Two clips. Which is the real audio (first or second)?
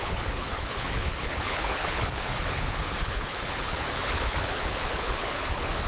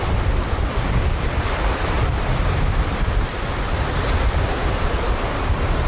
second